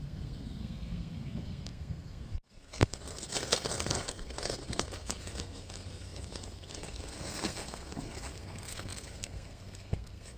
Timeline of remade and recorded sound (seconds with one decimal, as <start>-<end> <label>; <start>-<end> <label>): 0.0-10.4 remade